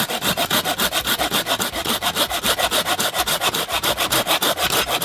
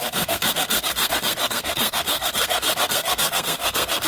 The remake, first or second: second